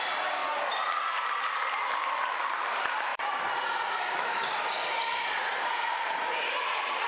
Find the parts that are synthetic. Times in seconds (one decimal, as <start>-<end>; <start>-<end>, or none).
0.0-7.1